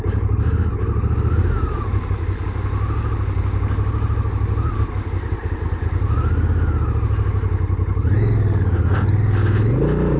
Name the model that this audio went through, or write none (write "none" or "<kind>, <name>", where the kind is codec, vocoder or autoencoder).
none